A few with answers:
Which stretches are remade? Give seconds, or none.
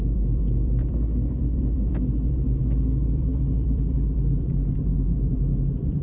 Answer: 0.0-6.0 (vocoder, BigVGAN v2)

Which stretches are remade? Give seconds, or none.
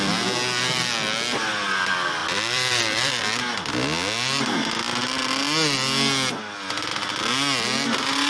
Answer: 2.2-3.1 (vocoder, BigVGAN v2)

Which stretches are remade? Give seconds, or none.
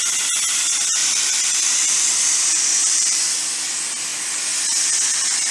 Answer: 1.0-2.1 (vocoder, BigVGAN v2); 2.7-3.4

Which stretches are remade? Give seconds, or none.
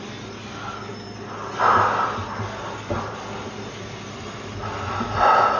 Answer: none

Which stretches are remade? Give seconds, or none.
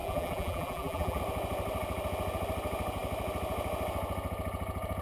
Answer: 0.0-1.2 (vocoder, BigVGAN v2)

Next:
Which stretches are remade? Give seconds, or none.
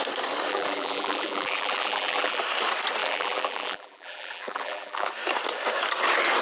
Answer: 0.5-2.4 (vocoder, BigVGAN v2); 3.0-5.1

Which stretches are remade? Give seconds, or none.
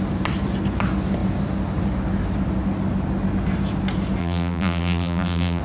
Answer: 4.2-5.6 (vocoder, BigVGAN v2)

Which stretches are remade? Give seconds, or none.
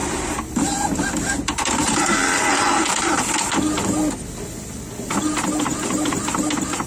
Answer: 0.0-4.1 (vocoder, BigVGAN v2); 5.7-6.9